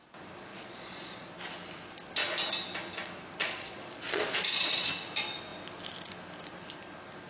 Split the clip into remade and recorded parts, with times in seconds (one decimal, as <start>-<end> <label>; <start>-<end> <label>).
0.0-0.5 recorded; 0.5-1.3 remade; 1.3-3.4 recorded; 3.4-4.9 remade; 4.9-7.3 recorded